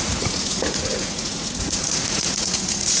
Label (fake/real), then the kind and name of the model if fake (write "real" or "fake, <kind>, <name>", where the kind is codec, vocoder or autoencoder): fake, vocoder, Vocos